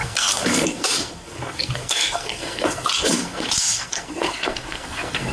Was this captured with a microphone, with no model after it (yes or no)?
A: no